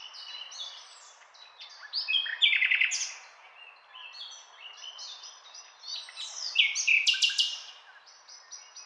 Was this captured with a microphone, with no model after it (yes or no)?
yes